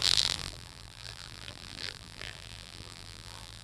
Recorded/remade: remade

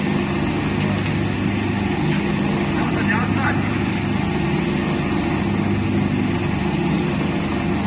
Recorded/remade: recorded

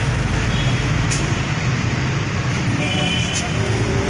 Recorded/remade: remade